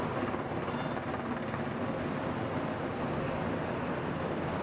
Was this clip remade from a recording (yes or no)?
no